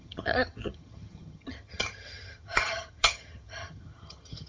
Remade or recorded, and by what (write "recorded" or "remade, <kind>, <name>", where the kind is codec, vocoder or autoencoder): remade, vocoder, HiFi-GAN